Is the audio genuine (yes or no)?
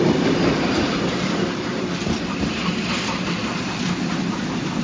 yes